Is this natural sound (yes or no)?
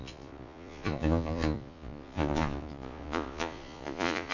no